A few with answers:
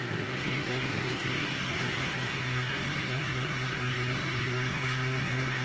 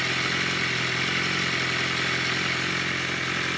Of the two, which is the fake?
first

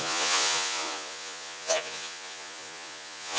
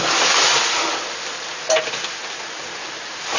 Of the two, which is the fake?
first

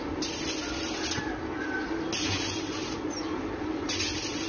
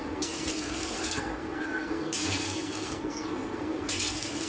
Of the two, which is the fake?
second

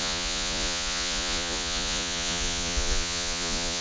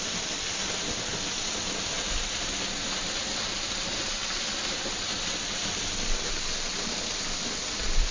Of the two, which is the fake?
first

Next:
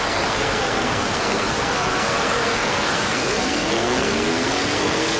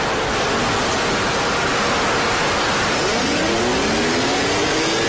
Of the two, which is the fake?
first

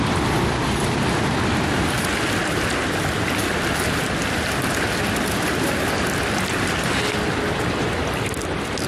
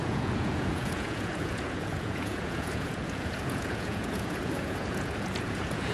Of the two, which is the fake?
second